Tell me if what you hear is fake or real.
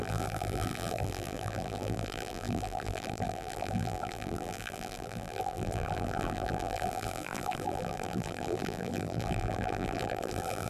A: fake